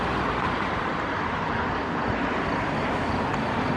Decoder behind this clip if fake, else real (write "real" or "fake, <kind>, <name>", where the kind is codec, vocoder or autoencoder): real